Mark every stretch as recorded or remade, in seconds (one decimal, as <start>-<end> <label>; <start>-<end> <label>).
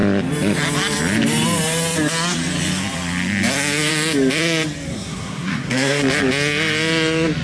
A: 0.0-4.9 recorded; 4.9-6.0 remade; 6.0-7.4 recorded